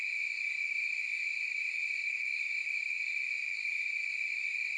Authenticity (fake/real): real